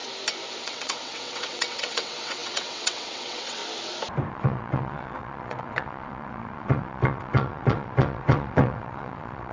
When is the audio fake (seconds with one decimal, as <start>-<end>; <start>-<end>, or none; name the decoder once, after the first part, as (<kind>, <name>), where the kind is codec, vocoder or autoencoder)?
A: 0.6-3.6 (vocoder, WaveNeXt); 4.3-9.5